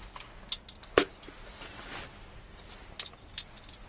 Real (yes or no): yes